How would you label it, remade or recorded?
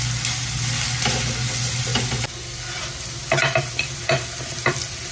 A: recorded